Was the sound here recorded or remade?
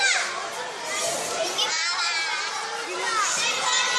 recorded